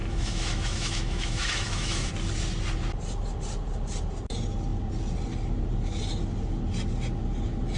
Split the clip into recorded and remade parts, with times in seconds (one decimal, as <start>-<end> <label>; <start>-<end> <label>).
0.0-2.1 remade; 2.1-7.8 recorded